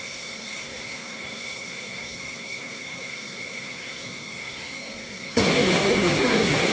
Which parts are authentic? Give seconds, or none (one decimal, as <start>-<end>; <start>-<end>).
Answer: none